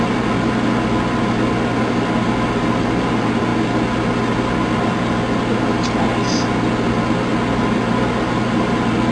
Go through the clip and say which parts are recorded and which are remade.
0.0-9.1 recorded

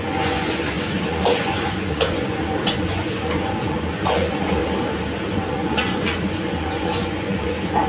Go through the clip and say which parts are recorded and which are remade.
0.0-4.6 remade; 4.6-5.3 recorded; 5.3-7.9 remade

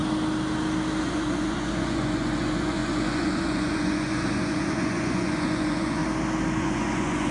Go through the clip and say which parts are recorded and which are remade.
0.0-1.0 recorded; 1.0-6.0 remade; 6.0-6.6 recorded; 6.6-7.3 remade